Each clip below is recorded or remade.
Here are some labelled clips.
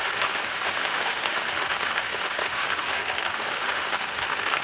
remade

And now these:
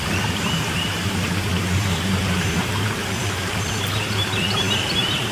remade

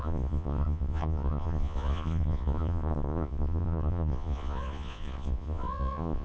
remade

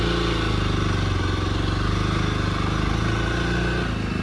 recorded